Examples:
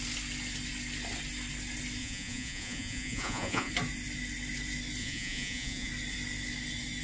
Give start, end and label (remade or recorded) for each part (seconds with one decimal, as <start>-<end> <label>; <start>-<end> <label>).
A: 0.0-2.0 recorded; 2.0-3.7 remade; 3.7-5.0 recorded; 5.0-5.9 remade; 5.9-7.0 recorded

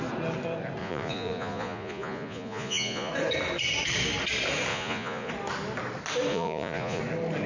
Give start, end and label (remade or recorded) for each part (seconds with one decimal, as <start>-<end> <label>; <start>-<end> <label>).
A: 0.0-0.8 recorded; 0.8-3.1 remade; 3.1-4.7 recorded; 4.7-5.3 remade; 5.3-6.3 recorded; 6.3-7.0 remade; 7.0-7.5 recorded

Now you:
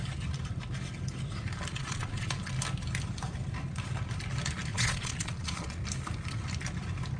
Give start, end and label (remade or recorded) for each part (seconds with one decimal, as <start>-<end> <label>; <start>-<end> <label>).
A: 0.0-1.7 recorded; 1.7-2.5 remade; 2.5-4.7 recorded; 4.7-5.8 remade; 5.8-7.2 recorded

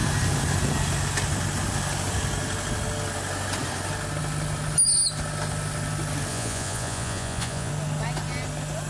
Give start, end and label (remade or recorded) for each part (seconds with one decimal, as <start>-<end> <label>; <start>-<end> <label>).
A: 0.0-6.3 recorded; 6.3-7.7 remade; 7.7-8.9 recorded